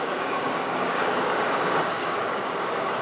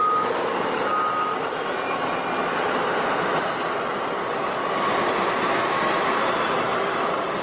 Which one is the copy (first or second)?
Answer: first